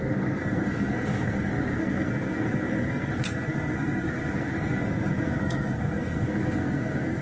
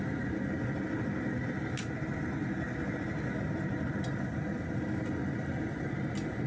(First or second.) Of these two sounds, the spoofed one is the first